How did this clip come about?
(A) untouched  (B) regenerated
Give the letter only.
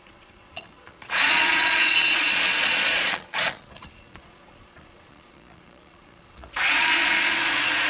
B